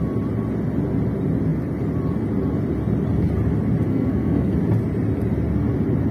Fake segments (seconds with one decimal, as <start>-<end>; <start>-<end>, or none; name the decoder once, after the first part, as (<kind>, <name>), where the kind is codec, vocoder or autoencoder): 3.9-4.5 (codec, SNAC)